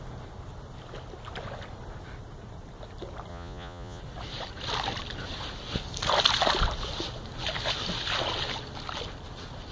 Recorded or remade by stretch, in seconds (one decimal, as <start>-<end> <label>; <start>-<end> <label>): 0.0-3.3 recorded; 3.3-4.0 remade; 4.0-9.7 recorded